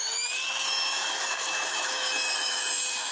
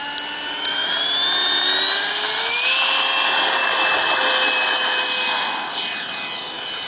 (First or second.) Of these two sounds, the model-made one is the first